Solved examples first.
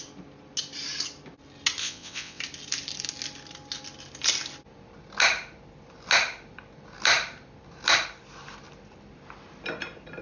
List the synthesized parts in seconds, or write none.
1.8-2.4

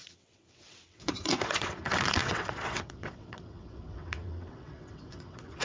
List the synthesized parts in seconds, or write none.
0.0-5.6

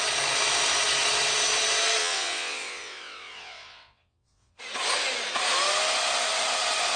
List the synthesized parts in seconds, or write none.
2.0-4.6